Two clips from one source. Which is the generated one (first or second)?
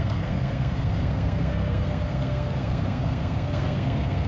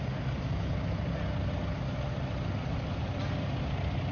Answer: first